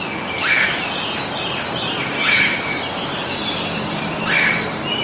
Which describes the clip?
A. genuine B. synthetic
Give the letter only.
A